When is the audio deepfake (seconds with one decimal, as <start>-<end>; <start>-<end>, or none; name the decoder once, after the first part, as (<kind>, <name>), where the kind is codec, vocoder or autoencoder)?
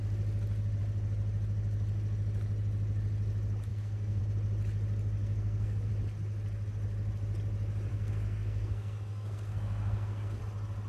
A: 3.7-4.2 (codec, SNAC); 5.2-5.9; 7.9-10.4